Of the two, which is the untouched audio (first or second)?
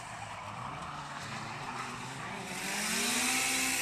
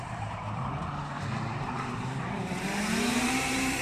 first